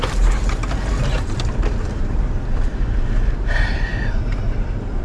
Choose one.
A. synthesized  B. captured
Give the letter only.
A